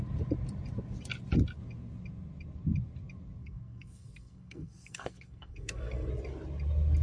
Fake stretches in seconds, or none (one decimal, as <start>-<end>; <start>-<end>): 3.4-6.1